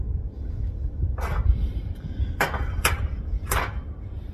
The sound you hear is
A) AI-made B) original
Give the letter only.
A